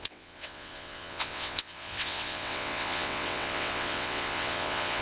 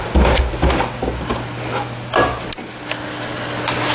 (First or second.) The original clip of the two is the second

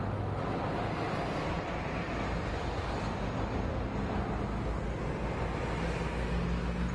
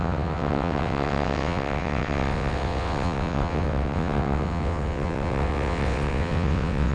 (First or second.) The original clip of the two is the first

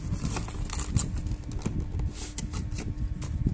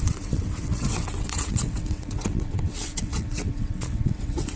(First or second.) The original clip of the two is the first